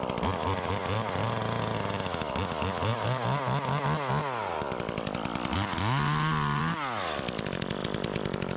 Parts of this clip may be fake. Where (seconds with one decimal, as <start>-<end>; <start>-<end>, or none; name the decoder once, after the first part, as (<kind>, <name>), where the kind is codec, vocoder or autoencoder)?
none